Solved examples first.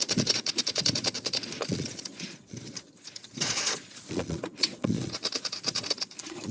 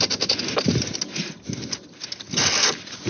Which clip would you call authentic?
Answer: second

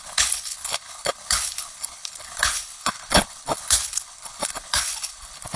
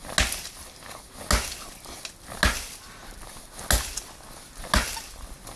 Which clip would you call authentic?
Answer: second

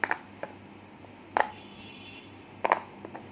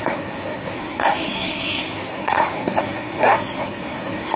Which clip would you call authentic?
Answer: first